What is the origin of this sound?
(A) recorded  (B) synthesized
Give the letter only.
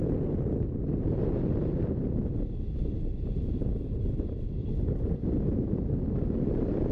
A